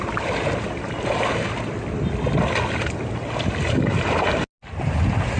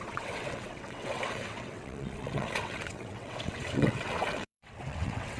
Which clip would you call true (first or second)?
first